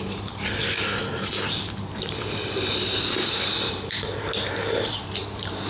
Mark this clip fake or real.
fake